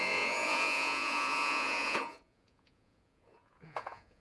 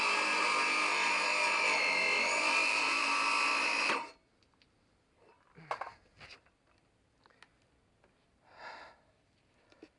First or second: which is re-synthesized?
first